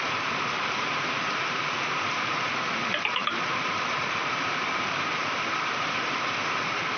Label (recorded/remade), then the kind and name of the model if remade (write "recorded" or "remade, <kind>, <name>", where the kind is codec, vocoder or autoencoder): remade, vocoder, BigVGAN v2